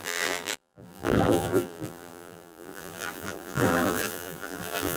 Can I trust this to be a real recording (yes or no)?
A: no